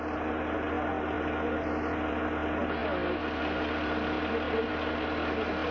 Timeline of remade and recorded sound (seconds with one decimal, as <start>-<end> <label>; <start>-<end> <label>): 0.0-5.7 recorded